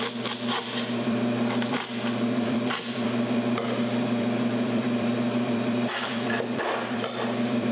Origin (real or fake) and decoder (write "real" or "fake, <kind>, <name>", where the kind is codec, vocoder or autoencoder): fake, vocoder, BigVGAN v2